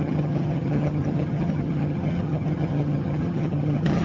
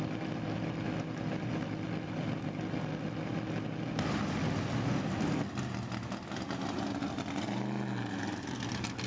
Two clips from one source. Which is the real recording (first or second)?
second